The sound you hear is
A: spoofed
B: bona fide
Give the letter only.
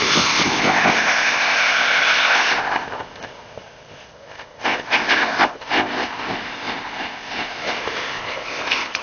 A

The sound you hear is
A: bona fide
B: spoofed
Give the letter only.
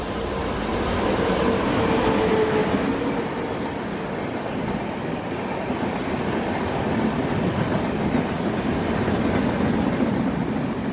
A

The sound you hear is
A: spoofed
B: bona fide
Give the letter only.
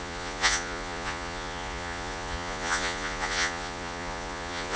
A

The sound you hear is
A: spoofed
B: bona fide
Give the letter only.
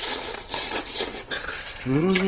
A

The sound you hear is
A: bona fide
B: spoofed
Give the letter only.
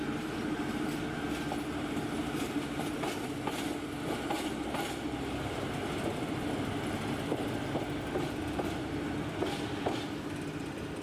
A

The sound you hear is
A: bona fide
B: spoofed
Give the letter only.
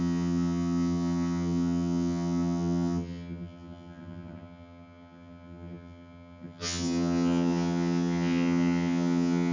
B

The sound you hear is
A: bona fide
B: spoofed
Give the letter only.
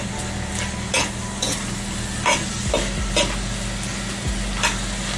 A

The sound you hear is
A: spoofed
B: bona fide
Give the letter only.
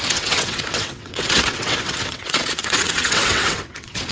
A